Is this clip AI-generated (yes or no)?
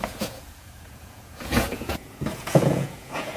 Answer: yes